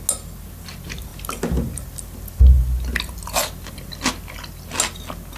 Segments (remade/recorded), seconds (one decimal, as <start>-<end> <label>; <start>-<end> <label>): 0.0-5.4 recorded